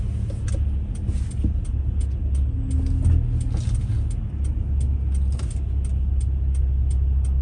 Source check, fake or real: real